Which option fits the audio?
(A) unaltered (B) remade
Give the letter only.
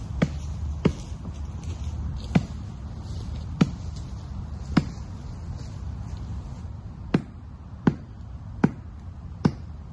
A